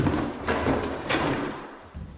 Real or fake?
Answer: fake